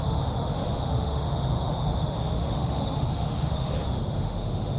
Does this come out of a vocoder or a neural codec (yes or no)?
yes